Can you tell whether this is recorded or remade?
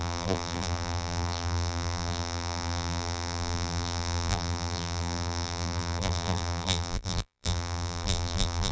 remade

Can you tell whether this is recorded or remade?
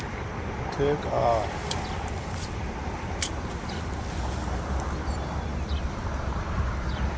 remade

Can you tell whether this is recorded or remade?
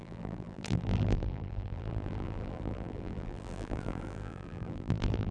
remade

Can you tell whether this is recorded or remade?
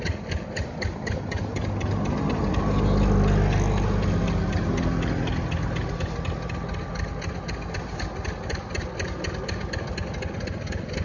recorded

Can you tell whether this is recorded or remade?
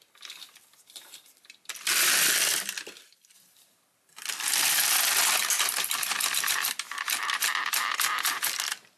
remade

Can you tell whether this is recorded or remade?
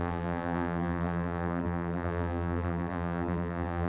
remade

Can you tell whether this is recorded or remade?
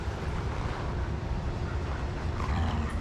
remade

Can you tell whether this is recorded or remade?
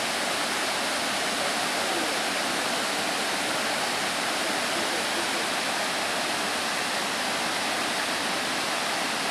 recorded